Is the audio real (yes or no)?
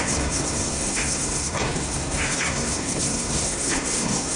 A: no